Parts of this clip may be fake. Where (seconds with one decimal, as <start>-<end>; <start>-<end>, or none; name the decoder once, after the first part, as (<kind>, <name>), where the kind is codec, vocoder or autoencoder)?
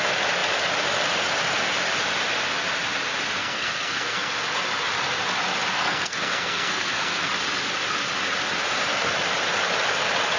3.4-4.3 (codec, SNAC); 5.7-7.3